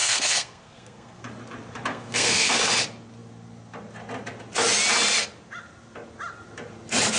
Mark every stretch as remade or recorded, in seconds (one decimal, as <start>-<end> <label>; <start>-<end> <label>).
0.0-1.2 remade; 1.2-1.9 recorded; 1.9-2.6 remade; 2.6-7.2 recorded